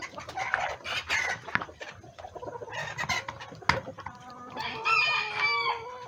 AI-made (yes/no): no